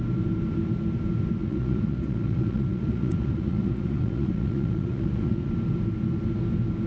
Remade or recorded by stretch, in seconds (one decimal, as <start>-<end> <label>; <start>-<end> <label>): 0.0-1.4 recorded; 1.4-5.5 remade; 5.5-6.9 recorded